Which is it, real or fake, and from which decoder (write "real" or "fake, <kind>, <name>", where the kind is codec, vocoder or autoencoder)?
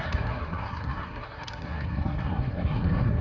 fake, codec, SNAC